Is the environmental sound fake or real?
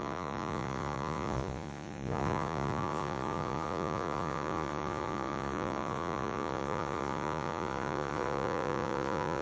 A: fake